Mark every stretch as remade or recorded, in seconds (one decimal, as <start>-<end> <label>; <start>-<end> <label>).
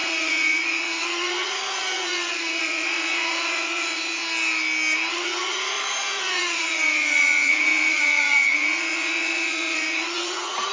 0.0-4.2 remade; 4.2-5.1 recorded; 5.1-10.7 remade